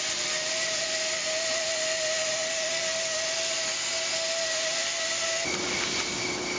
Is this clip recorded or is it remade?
recorded